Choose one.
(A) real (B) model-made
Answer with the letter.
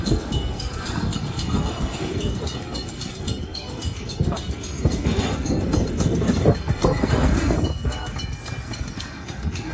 B